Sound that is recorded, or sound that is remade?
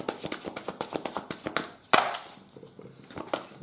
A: recorded